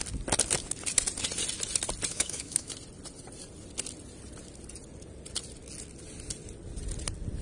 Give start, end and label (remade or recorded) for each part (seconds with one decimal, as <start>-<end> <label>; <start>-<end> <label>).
0.0-2.1 recorded; 2.1-2.7 remade; 2.7-7.4 recorded